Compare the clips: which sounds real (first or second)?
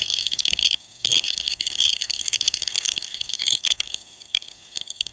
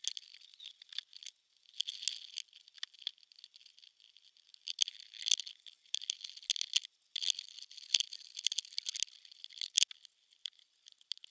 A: second